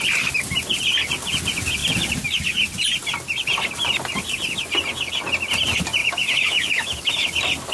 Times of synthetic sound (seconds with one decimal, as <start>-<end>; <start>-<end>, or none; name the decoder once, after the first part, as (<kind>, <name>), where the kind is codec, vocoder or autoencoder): 6.0-7.1 (autoencoder, DAC-VAE)